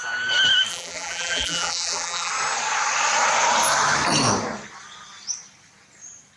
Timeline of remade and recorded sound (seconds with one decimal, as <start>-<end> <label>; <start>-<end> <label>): 0.0-0.7 recorded; 0.7-2.3 remade; 2.3-6.4 recorded